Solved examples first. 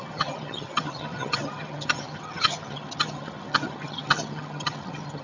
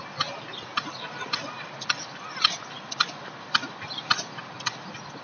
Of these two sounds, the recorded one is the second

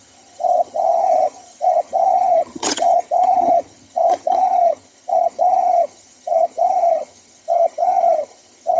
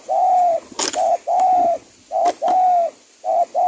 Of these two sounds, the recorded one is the second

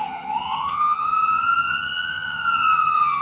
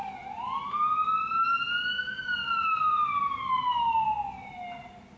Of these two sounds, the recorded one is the second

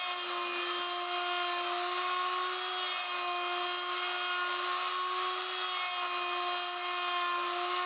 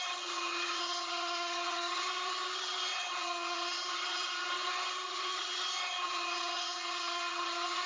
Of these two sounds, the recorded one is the first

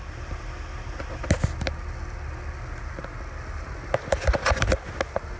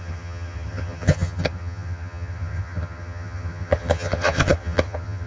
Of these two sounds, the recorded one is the first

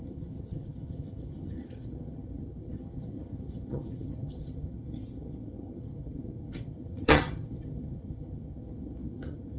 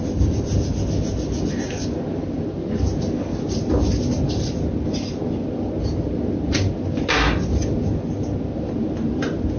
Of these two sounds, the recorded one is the second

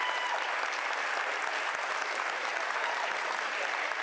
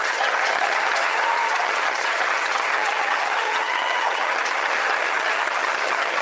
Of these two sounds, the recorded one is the first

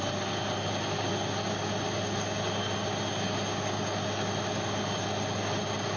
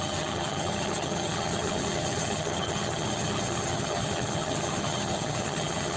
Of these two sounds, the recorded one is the first